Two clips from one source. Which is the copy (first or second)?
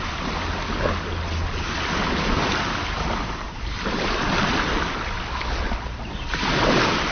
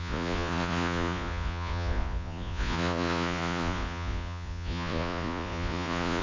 second